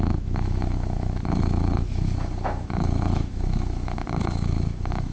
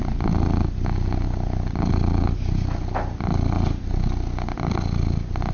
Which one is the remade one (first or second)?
first